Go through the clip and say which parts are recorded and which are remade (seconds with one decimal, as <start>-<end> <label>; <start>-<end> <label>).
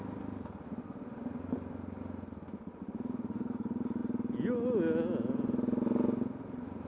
0.0-6.9 recorded